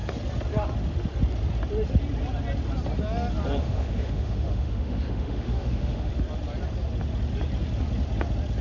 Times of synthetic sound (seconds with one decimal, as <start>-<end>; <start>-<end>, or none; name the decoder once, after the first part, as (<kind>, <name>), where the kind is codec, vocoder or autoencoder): 3.6-6.1 (autoencoder, DAC-VAE)